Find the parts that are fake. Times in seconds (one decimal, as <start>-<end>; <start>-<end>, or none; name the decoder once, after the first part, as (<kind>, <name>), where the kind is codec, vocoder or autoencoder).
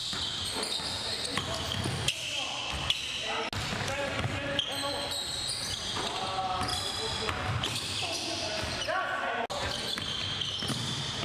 0.0-0.5 (vocoder, BigVGAN v2); 6.7-7.3